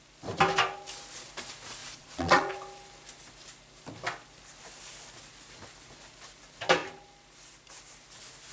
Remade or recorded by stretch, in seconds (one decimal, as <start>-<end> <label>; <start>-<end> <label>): 0.0-1.8 recorded; 1.8-2.5 remade; 2.5-8.5 recorded

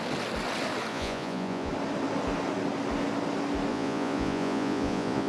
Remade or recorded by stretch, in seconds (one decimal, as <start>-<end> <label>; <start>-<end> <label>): 0.0-0.9 recorded; 0.9-1.7 remade; 1.7-3.7 recorded; 3.7-5.3 remade

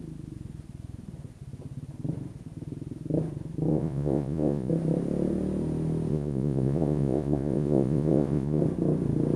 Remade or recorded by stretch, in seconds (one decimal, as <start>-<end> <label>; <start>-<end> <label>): 0.0-3.7 recorded; 3.7-4.7 remade; 4.7-6.1 recorded; 6.1-8.6 remade; 8.6-9.4 recorded

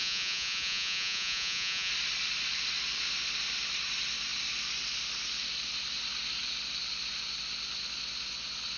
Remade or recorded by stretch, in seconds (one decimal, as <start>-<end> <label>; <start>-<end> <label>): 0.0-1.9 remade; 1.9-8.8 recorded

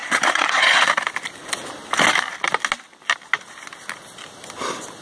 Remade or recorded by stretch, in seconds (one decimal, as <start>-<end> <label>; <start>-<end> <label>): 0.0-0.9 remade; 0.9-5.0 recorded

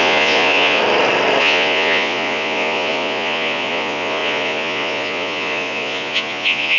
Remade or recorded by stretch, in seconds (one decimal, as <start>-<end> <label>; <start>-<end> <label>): 0.0-0.8 remade; 0.8-1.4 recorded; 1.4-6.8 remade

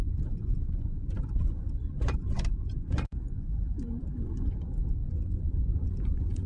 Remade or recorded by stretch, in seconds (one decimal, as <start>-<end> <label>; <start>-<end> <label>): 0.0-6.5 remade

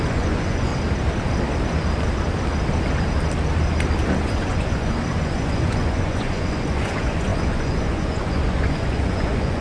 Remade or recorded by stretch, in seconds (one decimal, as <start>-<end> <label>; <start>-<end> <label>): 0.0-0.7 remade; 0.7-4.2 recorded; 4.2-9.6 remade